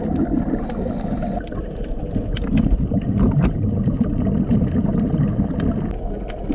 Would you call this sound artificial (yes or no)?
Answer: no